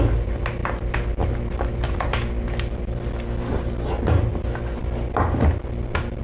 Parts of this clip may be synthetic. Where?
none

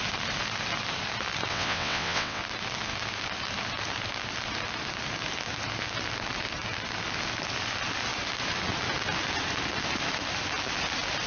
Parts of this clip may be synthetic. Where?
1.5-2.4 (vocoder, WaveNeXt)

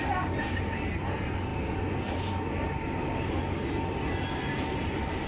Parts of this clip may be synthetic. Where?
none

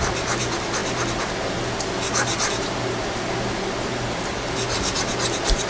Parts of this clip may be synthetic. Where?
none

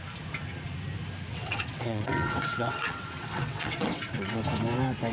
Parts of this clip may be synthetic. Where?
1.3-4.4 (vocoder, WaveNeXt)

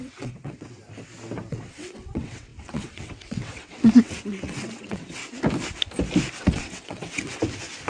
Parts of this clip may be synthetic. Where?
0.0-0.8 (vocoder, WaveNeXt); 1.5-5.2; 6.3-7.4

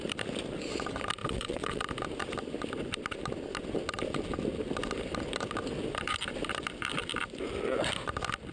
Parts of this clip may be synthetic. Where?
1.2-1.8 (vocoder, WaveNeXt)